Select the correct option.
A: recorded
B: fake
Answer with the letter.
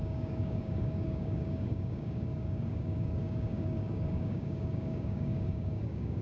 B